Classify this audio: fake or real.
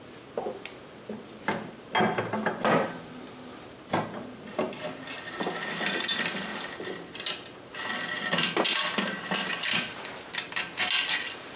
real